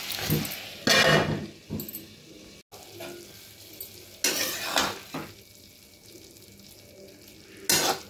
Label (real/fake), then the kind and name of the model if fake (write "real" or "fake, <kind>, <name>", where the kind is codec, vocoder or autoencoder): real